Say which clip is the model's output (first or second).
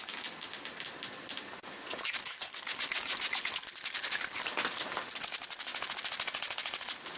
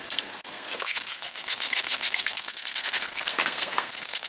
second